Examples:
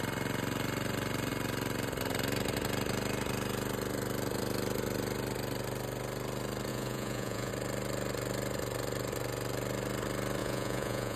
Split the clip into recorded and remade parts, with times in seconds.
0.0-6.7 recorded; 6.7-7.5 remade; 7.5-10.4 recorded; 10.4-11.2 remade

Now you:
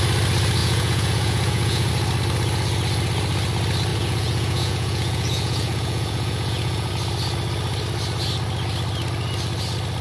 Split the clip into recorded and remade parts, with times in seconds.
0.0-0.6 recorded; 0.6-1.9 remade; 1.9-3.9 recorded; 3.9-6.9 remade; 6.9-10.0 recorded

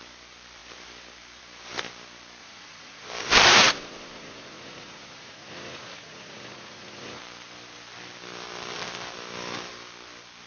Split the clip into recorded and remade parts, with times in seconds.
0.0-2.4 recorded; 2.4-3.1 remade; 3.1-3.5 recorded; 3.5-7.2 remade; 7.2-10.5 recorded

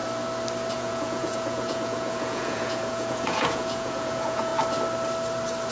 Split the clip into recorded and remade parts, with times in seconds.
0.0-0.7 recorded; 0.7-4.5 remade; 4.5-5.7 recorded